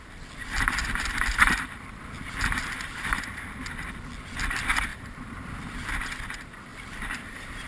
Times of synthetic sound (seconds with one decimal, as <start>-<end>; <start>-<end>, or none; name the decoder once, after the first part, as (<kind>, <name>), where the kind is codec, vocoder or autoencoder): 0.8-3.6 (vocoder, BigVGAN v2); 4.9-5.6; 6.7-7.7